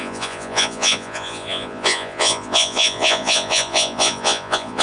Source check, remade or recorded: remade